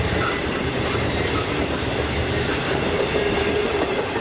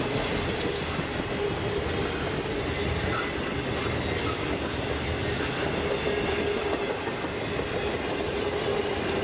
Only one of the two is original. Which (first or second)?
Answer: second